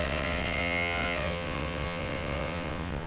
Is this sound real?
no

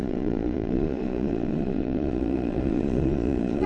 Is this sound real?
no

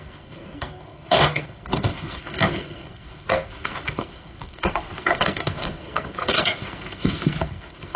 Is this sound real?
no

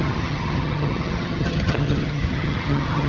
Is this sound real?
no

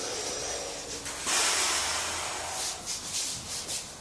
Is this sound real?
yes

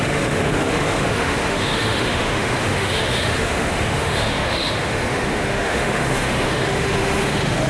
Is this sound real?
no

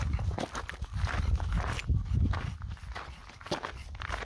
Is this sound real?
yes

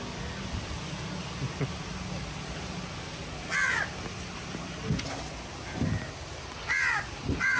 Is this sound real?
yes